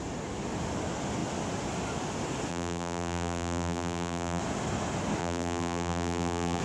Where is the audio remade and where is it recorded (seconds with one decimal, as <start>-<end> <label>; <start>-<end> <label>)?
0.0-2.5 recorded; 2.5-4.4 remade; 4.4-5.2 recorded; 5.2-6.6 remade